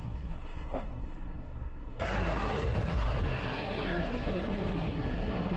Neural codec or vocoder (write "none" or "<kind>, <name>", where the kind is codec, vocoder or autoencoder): codec, SNAC